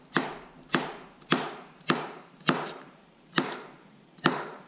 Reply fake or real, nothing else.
fake